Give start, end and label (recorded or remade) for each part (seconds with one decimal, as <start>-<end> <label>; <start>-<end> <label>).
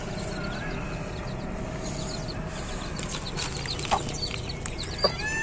0.0-5.4 recorded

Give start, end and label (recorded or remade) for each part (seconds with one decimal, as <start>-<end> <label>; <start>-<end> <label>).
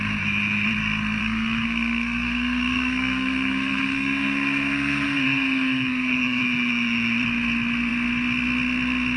0.0-1.2 recorded; 1.2-6.4 remade; 6.4-9.2 recorded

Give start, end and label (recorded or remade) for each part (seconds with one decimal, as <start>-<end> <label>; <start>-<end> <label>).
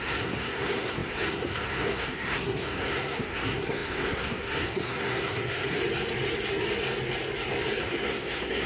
0.0-5.8 remade; 5.8-7.8 recorded; 7.8-8.7 remade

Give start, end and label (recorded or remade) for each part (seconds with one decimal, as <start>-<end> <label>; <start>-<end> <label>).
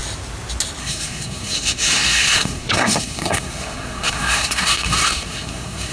0.0-0.8 recorded; 0.8-5.9 remade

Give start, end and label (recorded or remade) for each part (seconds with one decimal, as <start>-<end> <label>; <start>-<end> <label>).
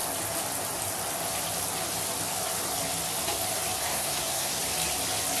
0.0-3.8 recorded; 3.8-4.6 remade; 4.6-5.4 recorded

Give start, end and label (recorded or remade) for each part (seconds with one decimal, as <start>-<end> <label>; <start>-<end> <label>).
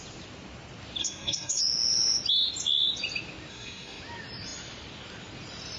0.0-1.0 recorded; 1.0-1.6 remade; 1.6-3.5 recorded; 3.5-4.0 remade; 4.0-5.8 recorded